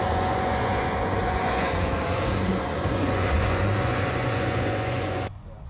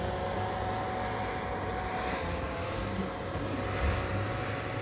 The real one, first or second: second